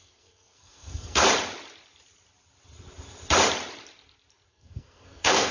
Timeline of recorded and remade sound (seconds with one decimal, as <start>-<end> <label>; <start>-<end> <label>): 0.0-1.2 remade; 1.2-4.5 recorded; 4.5-5.5 remade